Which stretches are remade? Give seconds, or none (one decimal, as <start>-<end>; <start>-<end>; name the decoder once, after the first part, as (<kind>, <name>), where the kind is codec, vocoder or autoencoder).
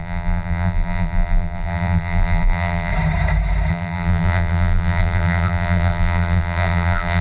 0.0-2.9 (vocoder, BigVGAN v2); 3.7-7.2